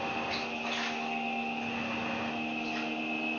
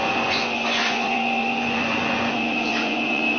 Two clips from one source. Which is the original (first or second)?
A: first